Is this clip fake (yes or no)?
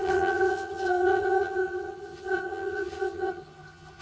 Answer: yes